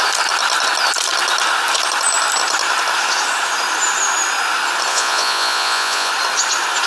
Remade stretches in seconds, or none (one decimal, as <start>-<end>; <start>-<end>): 4.9-6.1